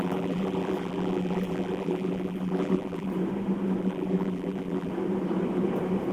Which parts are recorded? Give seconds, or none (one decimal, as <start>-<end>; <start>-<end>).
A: 3.1-3.8; 4.9-6.1